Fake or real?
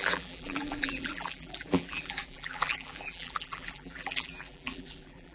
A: fake